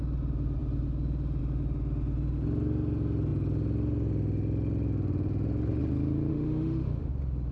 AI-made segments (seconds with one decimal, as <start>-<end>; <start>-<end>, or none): 6.3-7.1